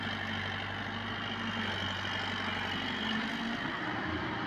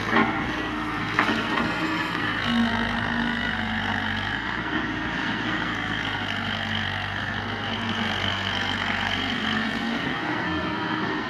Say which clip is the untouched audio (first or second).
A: first